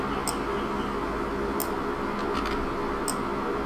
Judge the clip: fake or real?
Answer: real